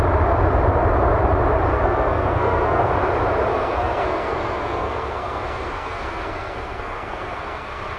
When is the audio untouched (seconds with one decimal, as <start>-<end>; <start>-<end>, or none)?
0.0-1.7; 2.9-3.5